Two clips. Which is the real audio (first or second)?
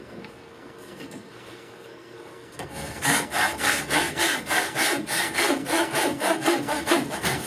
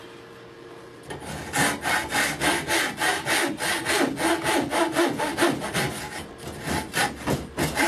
second